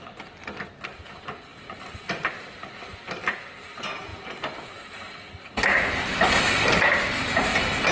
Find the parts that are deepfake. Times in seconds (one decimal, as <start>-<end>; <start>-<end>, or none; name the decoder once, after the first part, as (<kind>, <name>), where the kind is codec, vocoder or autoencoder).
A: none